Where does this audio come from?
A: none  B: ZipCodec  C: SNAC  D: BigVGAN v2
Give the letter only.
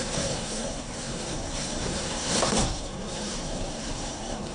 C